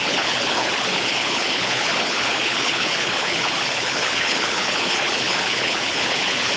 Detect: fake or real fake